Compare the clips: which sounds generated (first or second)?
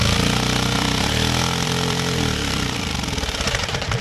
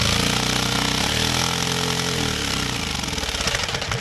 first